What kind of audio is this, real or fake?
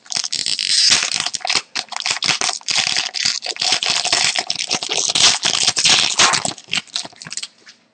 real